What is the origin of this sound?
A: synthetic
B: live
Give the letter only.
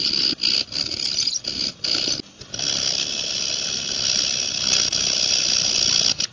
B